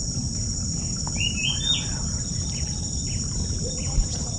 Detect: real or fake real